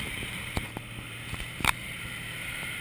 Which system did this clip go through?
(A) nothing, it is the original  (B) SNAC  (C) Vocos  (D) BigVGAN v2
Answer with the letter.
D